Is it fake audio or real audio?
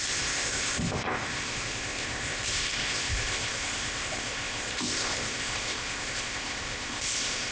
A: fake